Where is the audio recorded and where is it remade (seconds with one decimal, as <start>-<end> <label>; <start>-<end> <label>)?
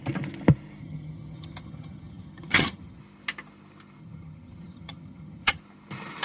0.0-0.8 recorded; 0.8-3.0 remade; 3.0-4.0 recorded; 4.0-5.6 remade; 5.6-6.2 recorded